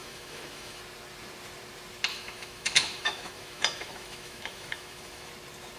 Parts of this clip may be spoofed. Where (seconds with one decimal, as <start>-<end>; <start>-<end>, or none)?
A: 0.0-0.8; 2.1-5.3